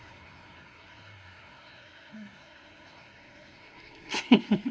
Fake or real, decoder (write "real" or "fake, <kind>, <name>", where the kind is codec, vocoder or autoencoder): fake, codec, SNAC